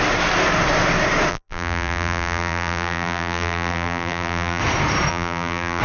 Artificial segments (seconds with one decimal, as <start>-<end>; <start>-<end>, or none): 1.3-4.6; 5.1-5.8